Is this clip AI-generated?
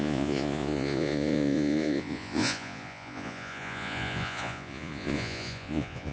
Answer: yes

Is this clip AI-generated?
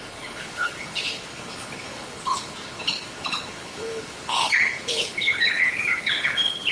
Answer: yes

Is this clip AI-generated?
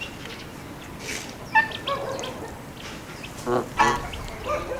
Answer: no